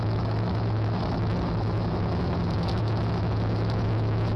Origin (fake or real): fake